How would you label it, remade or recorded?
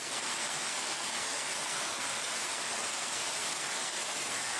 remade